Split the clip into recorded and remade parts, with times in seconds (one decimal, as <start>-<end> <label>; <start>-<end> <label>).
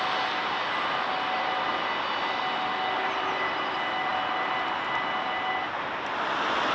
0.0-6.7 recorded